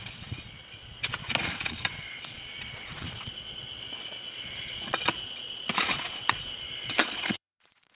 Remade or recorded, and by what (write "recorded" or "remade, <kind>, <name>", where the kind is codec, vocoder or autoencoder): remade, vocoder, Vocos